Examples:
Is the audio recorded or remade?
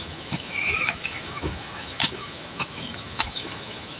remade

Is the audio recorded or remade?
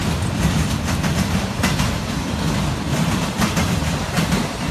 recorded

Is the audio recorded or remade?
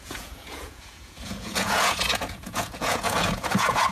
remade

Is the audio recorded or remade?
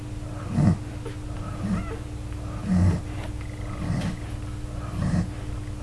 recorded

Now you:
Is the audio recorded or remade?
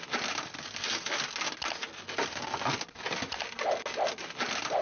recorded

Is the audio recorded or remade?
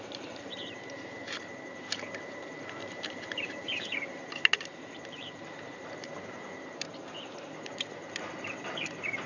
remade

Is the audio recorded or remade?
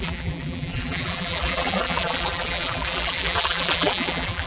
remade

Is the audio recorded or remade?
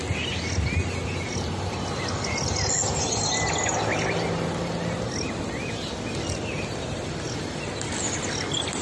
recorded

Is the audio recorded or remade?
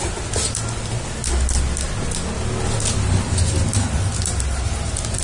recorded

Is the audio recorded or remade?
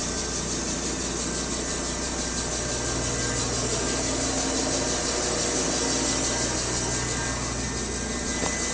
recorded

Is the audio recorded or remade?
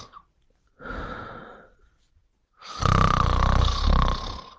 recorded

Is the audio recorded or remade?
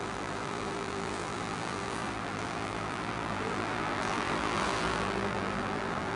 remade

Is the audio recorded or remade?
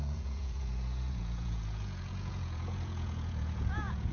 remade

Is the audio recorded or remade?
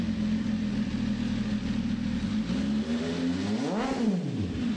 recorded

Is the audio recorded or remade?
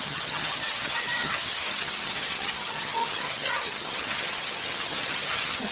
remade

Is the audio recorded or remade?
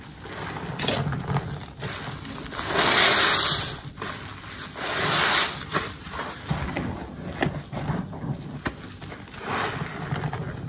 recorded